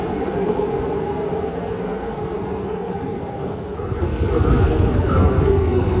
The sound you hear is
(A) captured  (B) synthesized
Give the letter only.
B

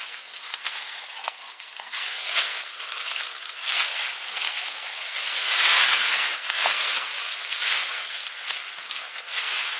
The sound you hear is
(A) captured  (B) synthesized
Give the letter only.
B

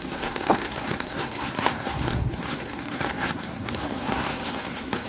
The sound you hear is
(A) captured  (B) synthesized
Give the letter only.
B